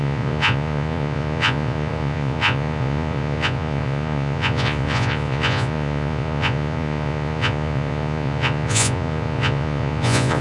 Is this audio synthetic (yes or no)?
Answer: yes